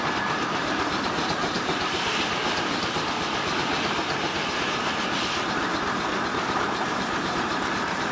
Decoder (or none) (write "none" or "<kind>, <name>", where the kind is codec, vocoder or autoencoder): vocoder, BigVGAN v2